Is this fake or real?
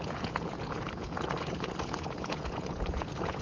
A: fake